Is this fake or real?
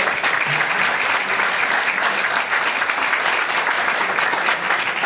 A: real